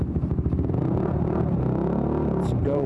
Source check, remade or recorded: remade